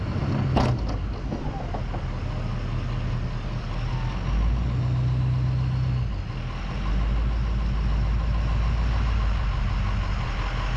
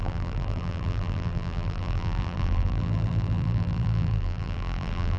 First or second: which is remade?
second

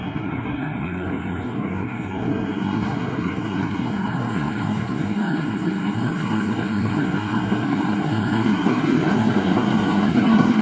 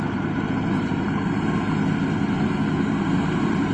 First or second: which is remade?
first